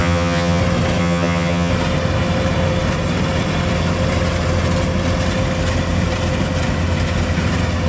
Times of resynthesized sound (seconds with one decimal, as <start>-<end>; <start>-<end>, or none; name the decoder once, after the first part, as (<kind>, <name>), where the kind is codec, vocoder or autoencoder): 0.0-0.6 (vocoder, HiFi-GAN); 1.0-1.7